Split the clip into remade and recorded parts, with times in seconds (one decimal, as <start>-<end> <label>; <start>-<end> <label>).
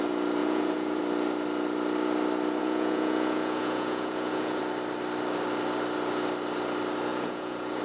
0.0-0.4 recorded; 0.4-1.0 remade; 1.0-2.6 recorded; 2.6-4.6 remade; 4.6-7.1 recorded; 7.1-7.8 remade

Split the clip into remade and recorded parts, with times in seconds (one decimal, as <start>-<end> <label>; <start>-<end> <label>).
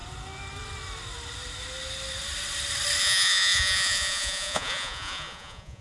0.0-3.0 recorded; 3.0-5.8 remade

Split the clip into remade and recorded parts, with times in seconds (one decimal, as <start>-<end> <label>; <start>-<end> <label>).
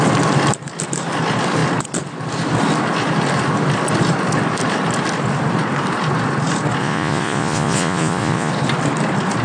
0.0-6.8 recorded; 6.8-8.5 remade; 8.5-9.4 recorded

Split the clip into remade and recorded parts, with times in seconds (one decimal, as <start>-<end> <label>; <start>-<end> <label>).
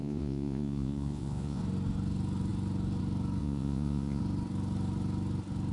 0.0-1.6 remade; 1.6-3.4 recorded; 3.4-4.2 remade; 4.2-5.7 recorded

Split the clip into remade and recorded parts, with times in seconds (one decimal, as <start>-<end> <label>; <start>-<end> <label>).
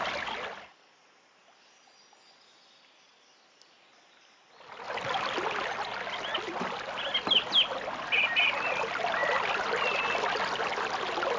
0.0-11.4 recorded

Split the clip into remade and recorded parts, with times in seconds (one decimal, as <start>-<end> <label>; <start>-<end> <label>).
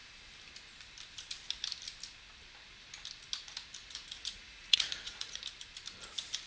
0.0-3.8 recorded; 3.8-5.4 remade; 5.4-6.5 recorded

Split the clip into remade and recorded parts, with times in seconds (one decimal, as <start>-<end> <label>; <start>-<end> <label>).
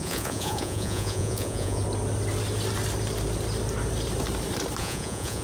0.0-1.8 remade; 1.8-4.8 recorded; 4.8-5.4 remade